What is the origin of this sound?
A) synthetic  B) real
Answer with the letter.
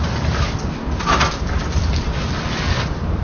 B